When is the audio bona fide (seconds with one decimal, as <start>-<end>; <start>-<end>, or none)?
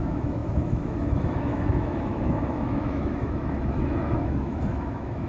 none